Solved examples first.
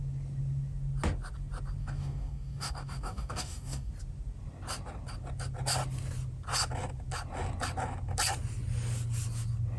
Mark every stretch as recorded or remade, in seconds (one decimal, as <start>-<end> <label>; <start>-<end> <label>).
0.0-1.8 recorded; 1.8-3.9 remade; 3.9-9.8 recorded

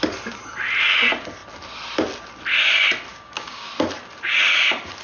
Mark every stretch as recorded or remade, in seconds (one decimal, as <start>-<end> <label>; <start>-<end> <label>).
0.0-3.1 recorded; 3.1-3.7 remade; 3.7-5.0 recorded

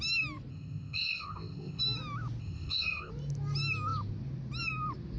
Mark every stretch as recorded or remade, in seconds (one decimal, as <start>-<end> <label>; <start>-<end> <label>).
0.0-0.5 recorded; 0.5-1.8 remade; 1.8-2.4 recorded; 2.4-3.1 remade; 3.1-5.2 recorded

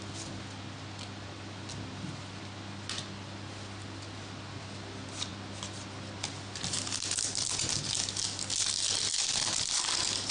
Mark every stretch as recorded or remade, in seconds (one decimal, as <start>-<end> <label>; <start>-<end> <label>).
0.0-10.3 recorded